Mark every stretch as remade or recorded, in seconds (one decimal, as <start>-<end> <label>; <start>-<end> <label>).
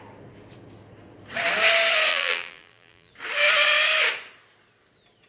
0.0-2.1 recorded; 2.1-3.1 remade; 3.1-5.3 recorded